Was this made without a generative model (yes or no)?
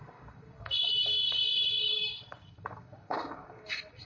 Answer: no